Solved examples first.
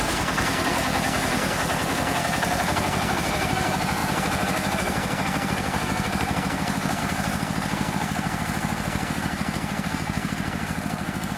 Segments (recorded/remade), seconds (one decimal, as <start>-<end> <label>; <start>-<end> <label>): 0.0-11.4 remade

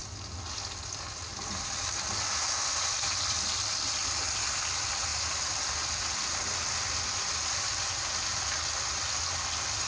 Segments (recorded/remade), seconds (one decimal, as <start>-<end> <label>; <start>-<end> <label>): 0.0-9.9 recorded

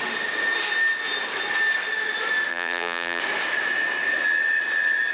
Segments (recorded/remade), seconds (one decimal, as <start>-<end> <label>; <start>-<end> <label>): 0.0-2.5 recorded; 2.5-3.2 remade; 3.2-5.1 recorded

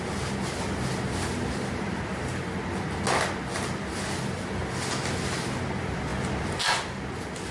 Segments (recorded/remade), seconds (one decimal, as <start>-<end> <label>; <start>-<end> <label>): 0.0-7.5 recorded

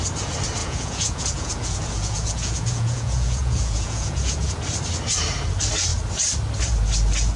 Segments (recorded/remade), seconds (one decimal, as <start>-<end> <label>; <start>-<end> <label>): 0.0-0.6 recorded; 0.6-4.5 remade; 4.5-7.4 recorded

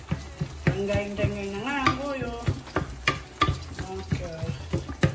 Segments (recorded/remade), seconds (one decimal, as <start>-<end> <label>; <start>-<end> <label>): 0.0-5.1 recorded

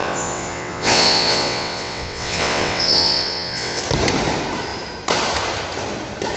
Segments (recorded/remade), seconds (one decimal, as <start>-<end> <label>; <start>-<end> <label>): 0.0-3.8 remade; 3.8-6.4 recorded